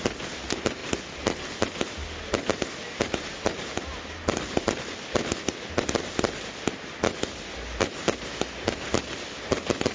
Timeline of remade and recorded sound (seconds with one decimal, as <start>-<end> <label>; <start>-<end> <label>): 0.0-9.9 recorded